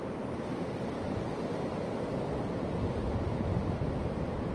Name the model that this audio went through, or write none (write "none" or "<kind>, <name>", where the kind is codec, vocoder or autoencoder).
none